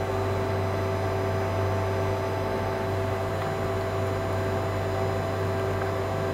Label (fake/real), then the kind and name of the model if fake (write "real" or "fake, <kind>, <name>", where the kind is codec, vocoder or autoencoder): real